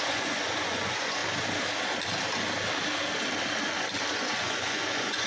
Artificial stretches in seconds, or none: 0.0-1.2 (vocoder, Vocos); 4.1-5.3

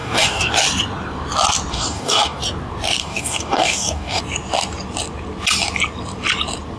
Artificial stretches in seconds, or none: 0.0-0.5 (codec, DAC); 1.7-2.4; 3.0-4.2